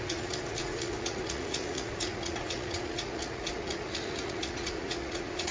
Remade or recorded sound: remade